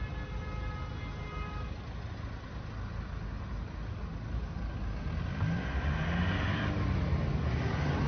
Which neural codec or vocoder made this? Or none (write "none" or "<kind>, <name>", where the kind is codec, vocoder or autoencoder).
none